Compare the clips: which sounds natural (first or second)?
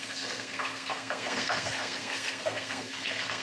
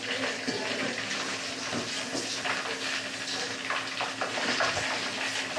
second